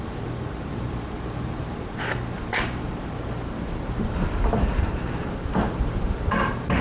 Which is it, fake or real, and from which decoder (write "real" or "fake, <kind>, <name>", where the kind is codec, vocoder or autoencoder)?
fake, vocoder, BigVGAN v2